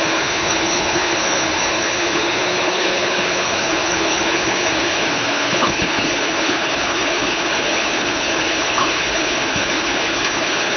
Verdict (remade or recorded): remade